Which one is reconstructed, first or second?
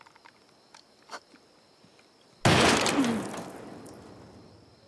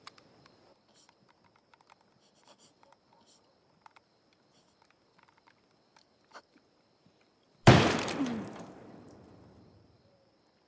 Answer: second